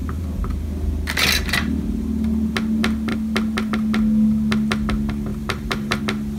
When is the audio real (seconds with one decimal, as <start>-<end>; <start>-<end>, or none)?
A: 0.7-5.3; 6.0-6.4